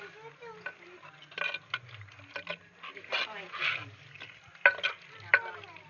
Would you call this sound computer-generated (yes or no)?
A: no